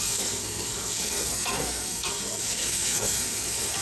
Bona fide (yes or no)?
no